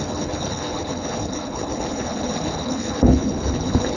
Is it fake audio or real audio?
fake